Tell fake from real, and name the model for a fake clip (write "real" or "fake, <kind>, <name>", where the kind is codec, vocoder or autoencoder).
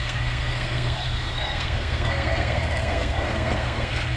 fake, codec, SNAC